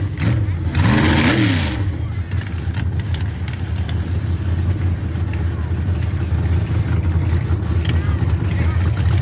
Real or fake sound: real